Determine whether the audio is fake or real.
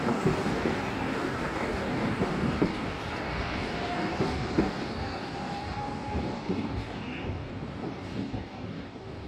fake